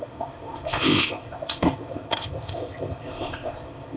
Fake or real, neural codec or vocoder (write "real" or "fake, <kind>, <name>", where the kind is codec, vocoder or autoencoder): fake, codec, ZipCodec